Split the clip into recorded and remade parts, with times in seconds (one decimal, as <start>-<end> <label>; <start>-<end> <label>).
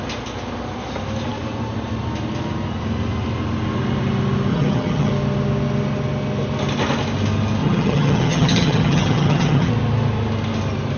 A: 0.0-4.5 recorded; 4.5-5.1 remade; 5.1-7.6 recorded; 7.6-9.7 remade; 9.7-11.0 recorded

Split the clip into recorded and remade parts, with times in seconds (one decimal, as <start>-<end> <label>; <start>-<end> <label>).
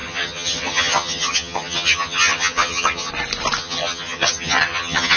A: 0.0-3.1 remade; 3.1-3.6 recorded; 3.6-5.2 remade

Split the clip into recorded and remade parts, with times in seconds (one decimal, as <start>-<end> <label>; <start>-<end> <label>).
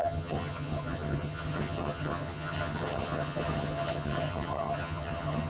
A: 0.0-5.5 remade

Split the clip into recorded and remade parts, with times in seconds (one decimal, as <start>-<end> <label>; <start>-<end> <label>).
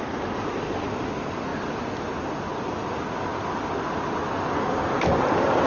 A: 0.0-5.7 recorded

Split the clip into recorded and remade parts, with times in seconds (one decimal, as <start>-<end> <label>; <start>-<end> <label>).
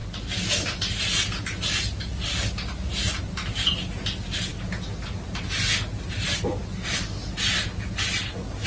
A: 0.0-8.7 recorded